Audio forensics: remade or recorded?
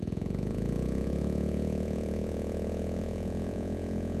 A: remade